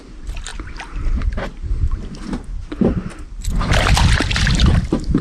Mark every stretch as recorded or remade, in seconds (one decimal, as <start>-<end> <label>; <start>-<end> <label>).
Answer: 0.0-5.2 remade